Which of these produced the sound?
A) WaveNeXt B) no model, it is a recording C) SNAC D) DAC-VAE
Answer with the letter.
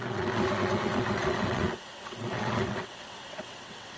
A